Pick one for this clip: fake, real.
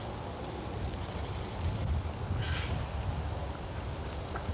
real